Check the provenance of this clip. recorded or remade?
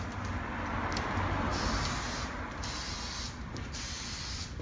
recorded